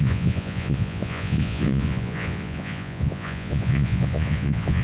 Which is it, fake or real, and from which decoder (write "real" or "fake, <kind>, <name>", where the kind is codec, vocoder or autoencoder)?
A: fake, vocoder, Vocos